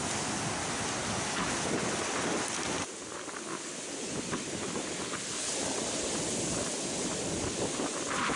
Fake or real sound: real